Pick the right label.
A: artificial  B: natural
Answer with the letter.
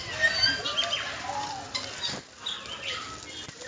B